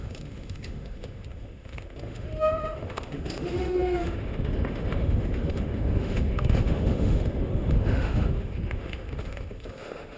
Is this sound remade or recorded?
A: remade